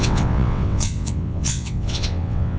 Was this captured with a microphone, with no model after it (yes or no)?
no